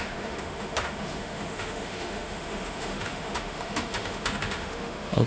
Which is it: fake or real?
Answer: fake